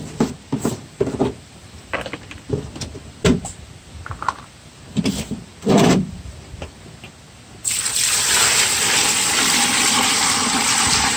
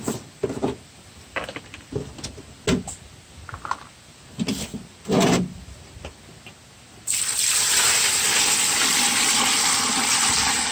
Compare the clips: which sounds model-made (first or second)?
first